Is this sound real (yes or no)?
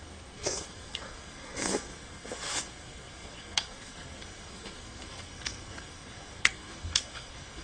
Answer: no